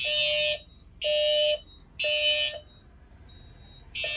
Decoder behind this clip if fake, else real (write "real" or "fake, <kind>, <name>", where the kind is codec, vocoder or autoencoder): real